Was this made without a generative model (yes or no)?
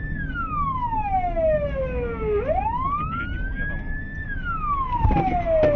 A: yes